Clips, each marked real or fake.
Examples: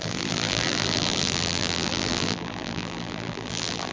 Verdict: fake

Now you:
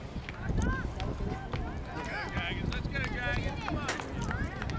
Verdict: real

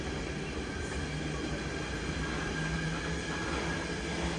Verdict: real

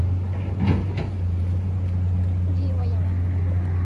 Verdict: real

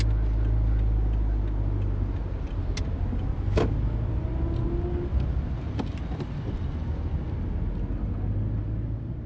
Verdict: real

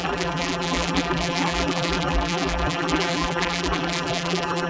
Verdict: fake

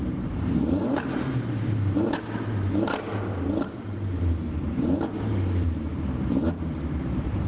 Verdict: fake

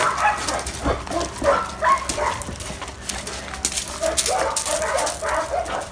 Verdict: real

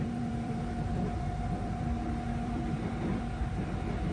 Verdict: fake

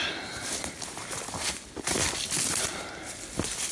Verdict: fake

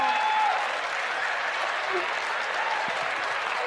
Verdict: real